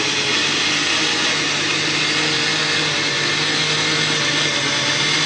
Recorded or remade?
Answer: recorded